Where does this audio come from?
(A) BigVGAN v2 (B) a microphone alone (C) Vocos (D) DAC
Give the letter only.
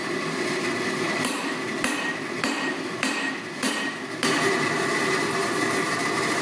A